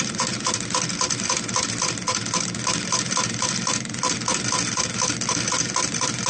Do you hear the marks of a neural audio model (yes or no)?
no